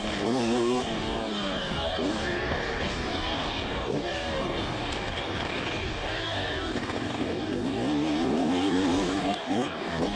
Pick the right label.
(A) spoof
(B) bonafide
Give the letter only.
A